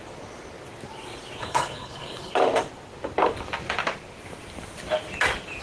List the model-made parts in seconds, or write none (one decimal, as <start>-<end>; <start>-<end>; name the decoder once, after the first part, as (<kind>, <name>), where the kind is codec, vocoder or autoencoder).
1.4-2.3 (codec, HILCodec)